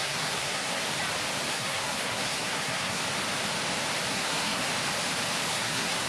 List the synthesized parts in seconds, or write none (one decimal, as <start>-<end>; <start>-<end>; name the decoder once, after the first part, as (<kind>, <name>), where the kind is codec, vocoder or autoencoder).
0.0-0.8 (codec, SNAC); 1.5-3.0; 4.1-4.7; 5.5-6.1